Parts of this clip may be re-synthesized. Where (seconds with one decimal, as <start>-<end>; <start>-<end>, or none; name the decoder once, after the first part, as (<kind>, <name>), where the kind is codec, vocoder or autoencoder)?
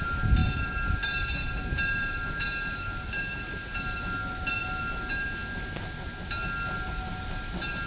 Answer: none